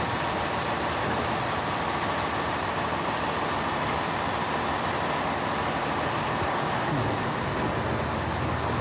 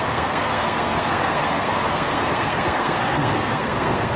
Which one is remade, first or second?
second